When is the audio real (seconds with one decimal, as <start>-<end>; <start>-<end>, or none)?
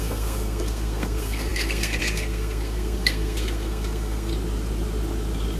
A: 4.3-5.6